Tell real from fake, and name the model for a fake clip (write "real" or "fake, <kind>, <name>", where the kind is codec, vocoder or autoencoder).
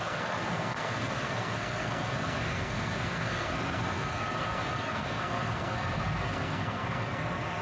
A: fake, codec, SNAC